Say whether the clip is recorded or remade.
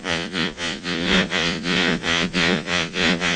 remade